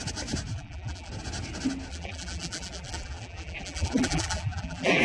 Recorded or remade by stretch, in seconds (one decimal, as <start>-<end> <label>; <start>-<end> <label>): 0.0-0.5 recorded; 0.5-1.1 remade; 1.1-1.9 recorded; 1.9-5.0 remade